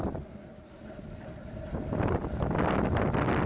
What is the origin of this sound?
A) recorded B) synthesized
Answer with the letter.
B